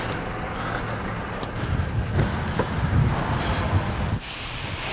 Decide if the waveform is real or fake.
real